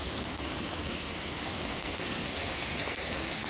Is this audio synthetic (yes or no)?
yes